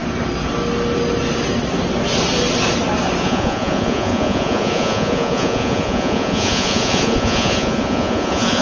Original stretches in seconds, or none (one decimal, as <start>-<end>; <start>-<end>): 0.0-3.2